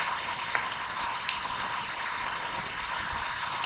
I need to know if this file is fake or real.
real